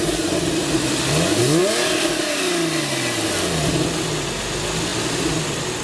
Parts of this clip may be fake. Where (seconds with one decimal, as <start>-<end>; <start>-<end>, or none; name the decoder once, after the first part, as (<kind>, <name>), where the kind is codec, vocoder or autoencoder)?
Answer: none